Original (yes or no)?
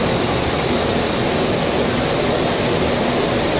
yes